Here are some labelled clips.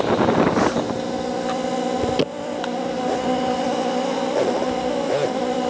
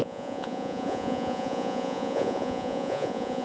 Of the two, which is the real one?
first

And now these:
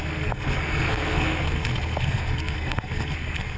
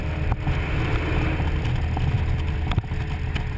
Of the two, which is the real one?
second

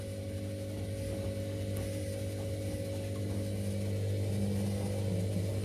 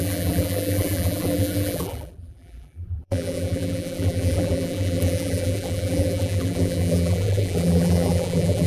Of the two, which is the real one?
first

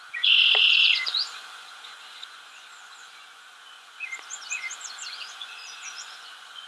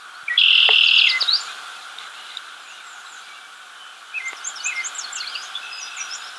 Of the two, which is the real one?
second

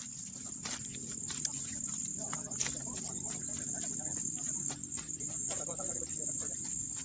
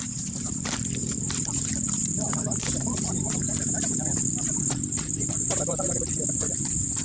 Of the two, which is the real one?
first